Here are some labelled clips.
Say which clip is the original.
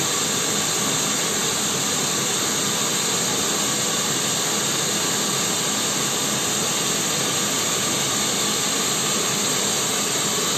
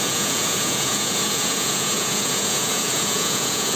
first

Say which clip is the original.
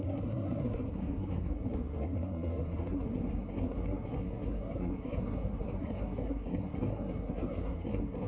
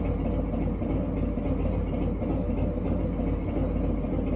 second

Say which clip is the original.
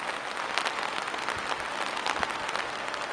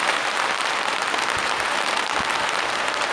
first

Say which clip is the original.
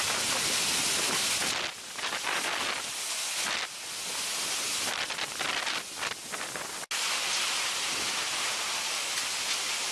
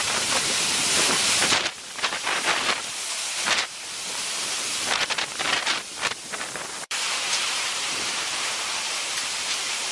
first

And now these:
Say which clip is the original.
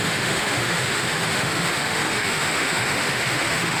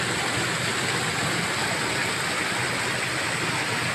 second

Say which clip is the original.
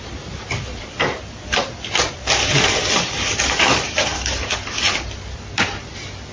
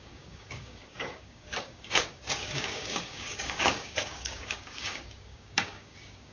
first